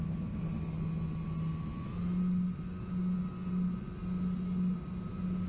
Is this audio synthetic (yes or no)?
no